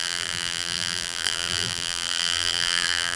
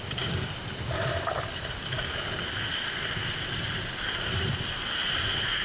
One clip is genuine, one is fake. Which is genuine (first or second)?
second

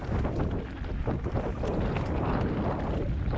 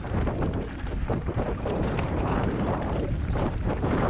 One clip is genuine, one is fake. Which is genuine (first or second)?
first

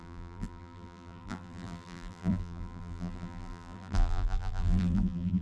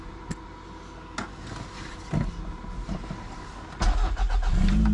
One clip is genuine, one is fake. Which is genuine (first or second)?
second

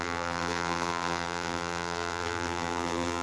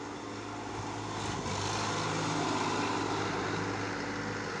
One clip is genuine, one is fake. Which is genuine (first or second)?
second